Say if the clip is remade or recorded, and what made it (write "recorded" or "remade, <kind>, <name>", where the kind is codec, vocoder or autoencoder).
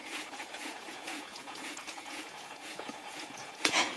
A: remade, vocoder, Vocos